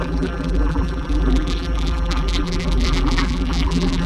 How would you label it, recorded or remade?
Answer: remade